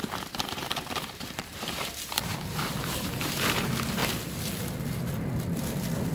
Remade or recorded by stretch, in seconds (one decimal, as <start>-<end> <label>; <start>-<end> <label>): 0.0-4.0 remade; 4.0-6.1 recorded